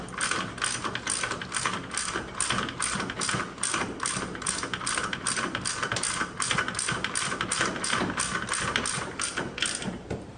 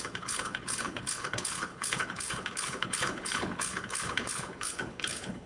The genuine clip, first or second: first